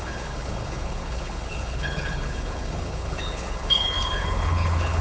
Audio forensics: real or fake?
fake